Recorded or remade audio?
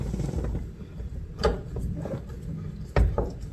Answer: recorded